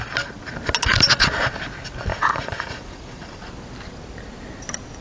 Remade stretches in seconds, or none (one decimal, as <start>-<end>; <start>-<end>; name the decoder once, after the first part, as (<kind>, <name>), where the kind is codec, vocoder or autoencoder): 2.1-3.4 (vocoder, Vocos)